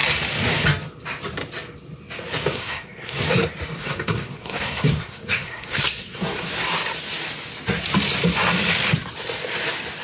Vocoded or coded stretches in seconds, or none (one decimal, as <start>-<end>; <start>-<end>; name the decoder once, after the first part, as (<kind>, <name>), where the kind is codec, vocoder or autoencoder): 2.5-3.2 (codec, SNAC); 3.8-6.5

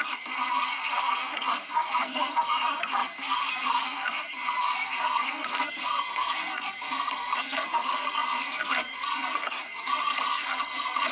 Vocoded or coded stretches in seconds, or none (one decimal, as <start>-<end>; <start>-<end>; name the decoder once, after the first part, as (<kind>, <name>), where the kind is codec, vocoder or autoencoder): 0.0-11.1 (codec, SNAC)

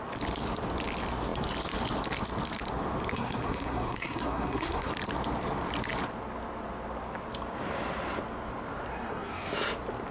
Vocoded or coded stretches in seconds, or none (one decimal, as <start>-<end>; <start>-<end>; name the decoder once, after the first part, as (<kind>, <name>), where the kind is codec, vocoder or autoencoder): 3.1-4.9 (codec, SNAC); 8.9-9.5

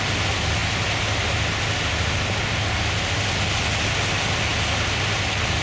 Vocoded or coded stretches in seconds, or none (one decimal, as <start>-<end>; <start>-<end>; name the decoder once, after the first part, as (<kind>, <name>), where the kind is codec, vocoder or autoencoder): none

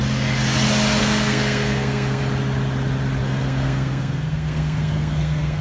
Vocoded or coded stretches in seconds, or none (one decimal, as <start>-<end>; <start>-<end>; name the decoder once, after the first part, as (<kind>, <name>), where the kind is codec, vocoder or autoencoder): 1.0-2.2 (codec, SNAC); 3.2-5.6